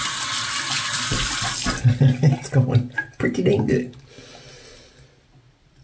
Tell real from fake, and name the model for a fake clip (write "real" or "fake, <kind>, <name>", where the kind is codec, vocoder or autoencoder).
real